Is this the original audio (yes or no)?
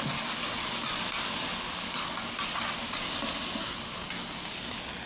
yes